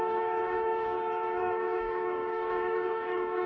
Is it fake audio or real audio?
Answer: fake